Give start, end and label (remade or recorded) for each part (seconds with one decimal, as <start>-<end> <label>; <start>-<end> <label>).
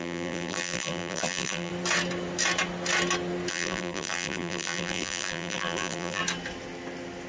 0.0-1.7 remade; 1.7-3.5 recorded; 3.5-6.2 remade; 6.2-7.3 recorded